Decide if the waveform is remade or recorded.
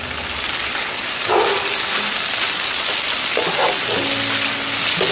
recorded